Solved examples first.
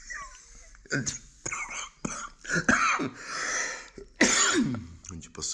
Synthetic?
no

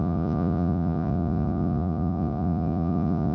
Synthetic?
yes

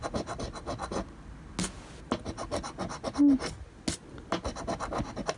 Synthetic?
no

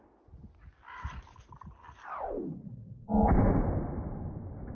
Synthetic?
no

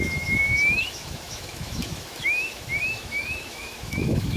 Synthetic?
yes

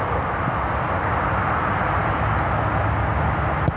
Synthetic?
no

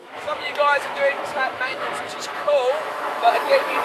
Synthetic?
yes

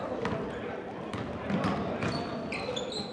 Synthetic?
no